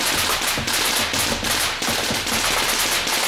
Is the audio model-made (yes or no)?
no